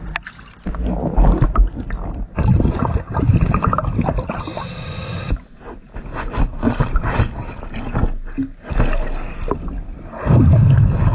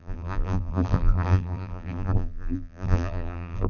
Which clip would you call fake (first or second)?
second